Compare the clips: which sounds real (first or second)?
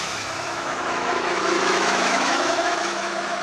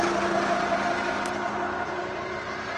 second